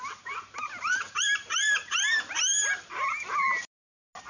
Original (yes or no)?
yes